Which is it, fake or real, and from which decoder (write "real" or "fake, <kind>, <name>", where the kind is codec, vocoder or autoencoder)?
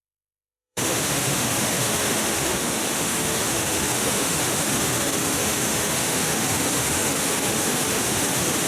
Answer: fake, autoencoder, DAC-VAE